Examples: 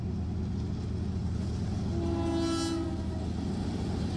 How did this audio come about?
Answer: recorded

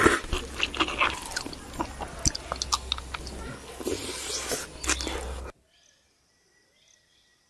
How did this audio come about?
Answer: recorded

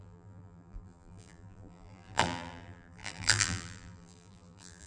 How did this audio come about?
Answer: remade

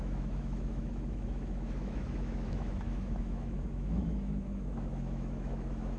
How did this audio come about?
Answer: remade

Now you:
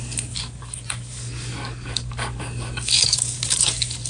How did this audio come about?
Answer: remade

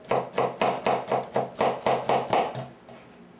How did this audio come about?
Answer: recorded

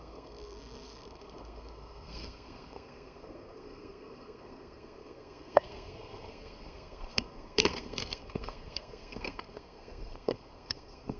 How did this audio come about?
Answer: remade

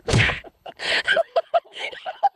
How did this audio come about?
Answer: remade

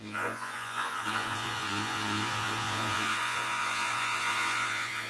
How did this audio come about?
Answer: remade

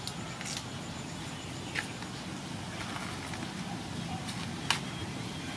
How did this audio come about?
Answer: recorded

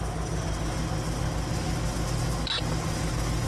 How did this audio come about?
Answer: recorded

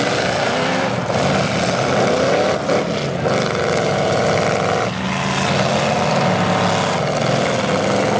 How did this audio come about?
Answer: recorded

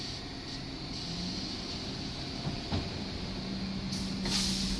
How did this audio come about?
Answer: recorded